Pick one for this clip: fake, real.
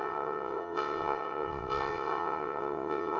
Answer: fake